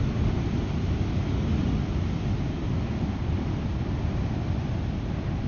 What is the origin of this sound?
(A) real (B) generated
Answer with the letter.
A